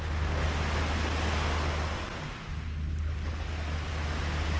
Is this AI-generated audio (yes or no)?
no